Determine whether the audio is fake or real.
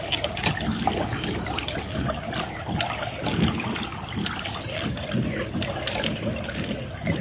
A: real